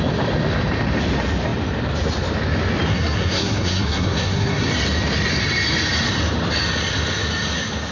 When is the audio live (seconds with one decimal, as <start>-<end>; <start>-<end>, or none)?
0.0-2.9; 4.7-7.9